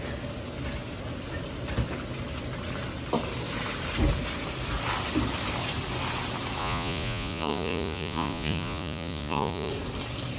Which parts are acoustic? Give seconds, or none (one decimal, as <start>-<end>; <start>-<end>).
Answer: 0.0-6.6; 9.7-10.4